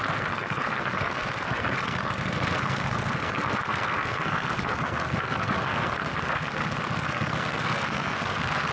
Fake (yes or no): yes